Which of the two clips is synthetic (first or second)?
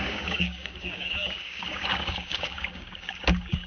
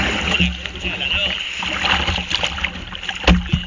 first